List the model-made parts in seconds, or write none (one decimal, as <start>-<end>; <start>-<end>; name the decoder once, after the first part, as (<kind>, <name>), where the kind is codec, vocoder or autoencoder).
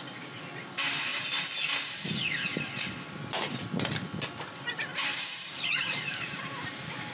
4.9-7.1 (vocoder, BigVGAN v2)